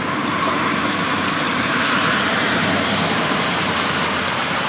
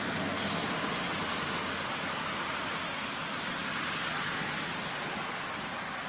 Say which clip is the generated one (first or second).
first